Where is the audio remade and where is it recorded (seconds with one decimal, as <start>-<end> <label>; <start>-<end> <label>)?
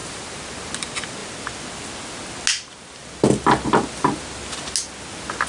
0.0-5.5 recorded